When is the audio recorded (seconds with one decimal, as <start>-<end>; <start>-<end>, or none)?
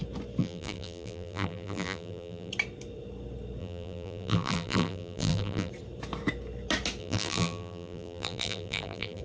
0.0-0.4; 2.5-3.6; 5.7-7.0